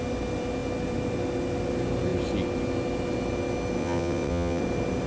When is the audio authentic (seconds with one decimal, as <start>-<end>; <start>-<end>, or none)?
0.0-3.8; 4.6-5.1